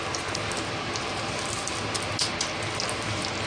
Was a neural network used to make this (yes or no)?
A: no